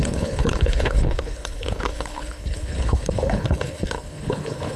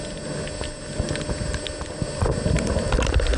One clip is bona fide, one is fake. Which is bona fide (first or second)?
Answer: second